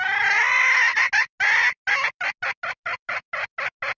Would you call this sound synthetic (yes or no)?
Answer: no